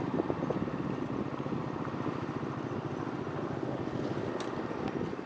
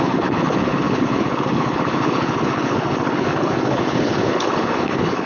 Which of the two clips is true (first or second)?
first